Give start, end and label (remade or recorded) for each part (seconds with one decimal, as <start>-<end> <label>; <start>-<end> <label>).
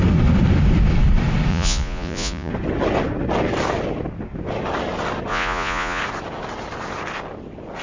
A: 0.0-1.5 recorded; 1.5-2.5 remade; 2.5-5.3 recorded; 5.3-6.0 remade; 6.0-7.8 recorded